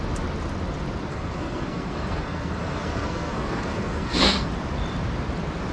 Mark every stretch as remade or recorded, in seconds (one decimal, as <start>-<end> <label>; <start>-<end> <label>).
0.0-1.1 recorded; 1.1-4.5 remade; 4.5-5.7 recorded